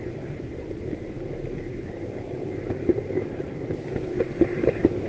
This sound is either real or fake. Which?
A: real